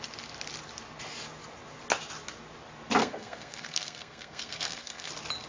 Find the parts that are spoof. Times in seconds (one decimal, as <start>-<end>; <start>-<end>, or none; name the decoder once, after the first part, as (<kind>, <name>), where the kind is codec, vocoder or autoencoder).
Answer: 3.0-5.1 (codec, SNAC)